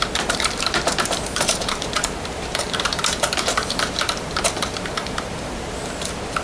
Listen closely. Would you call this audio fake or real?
fake